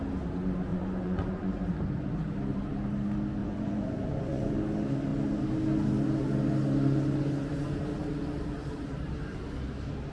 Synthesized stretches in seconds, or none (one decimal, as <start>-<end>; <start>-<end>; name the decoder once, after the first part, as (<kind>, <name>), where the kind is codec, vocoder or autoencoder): 0.7-1.5 (vocoder, Vocos); 3.4-4.6